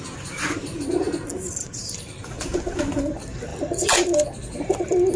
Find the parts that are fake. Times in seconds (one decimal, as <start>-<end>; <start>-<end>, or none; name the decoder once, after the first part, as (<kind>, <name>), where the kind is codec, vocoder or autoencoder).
1.6-2.2 (vocoder, BigVGAN v2); 3.5-5.2